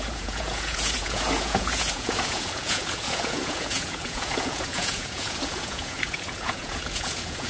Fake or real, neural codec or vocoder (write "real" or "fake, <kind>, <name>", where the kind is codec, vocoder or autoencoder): fake, vocoder, Vocos